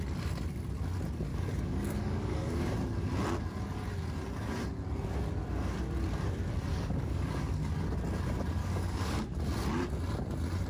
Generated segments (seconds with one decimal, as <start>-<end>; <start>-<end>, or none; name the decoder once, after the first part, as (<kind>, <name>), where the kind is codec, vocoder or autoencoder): 1.3-2.7 (codec, DAC); 6.7-7.7; 8.6-9.4